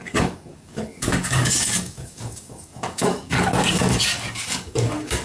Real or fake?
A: fake